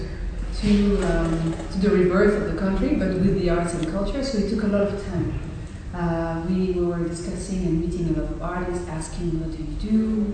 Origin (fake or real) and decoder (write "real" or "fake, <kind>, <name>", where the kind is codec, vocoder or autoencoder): real